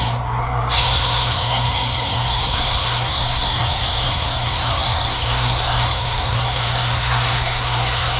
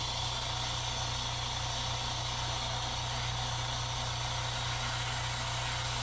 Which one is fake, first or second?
first